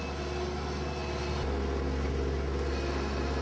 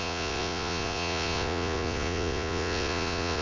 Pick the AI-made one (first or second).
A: second